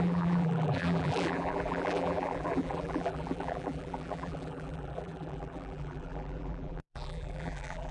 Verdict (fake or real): fake